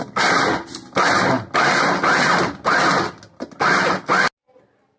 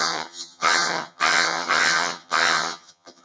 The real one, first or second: first